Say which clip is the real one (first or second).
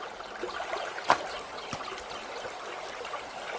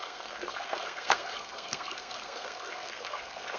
first